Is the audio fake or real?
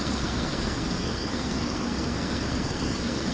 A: fake